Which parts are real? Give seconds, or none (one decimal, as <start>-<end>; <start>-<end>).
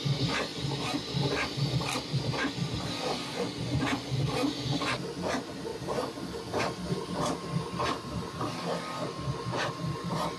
0.0-3.3; 4.1-10.4